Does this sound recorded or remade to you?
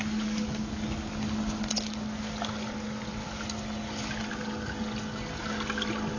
recorded